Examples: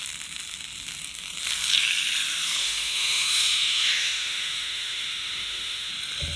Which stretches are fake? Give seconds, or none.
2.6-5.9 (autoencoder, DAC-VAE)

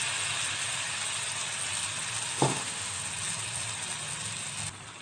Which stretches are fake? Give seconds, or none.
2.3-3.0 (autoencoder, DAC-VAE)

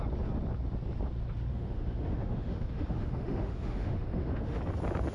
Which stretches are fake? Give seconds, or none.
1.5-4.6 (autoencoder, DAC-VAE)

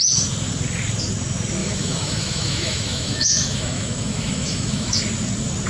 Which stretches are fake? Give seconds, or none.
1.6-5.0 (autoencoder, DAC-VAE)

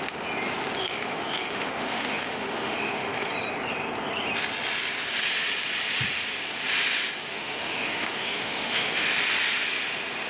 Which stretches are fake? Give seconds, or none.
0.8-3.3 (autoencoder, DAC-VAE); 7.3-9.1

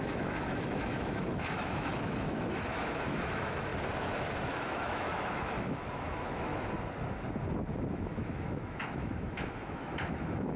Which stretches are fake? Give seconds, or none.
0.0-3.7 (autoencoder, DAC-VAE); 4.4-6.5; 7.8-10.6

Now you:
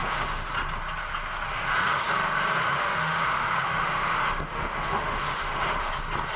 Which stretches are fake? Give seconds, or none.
0.0-0.5 (autoencoder, DAC-VAE); 1.5-2.1; 2.6-5.9

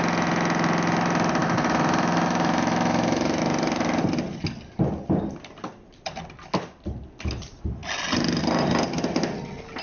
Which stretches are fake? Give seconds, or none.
1.4-3.4 (autoencoder, DAC-VAE)